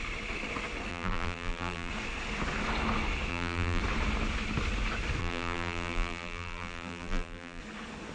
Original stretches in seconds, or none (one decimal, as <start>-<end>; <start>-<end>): 0.0-0.9; 1.9-3.3; 3.8-5.2; 7.6-8.1